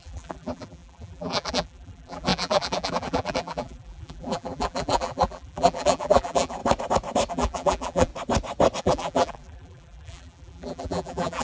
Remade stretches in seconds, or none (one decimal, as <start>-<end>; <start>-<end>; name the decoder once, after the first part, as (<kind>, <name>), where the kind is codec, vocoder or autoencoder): 0.0-6.6 (vocoder, BigVGAN v2); 7.3-8.1; 8.8-11.4